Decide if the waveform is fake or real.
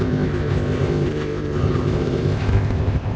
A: fake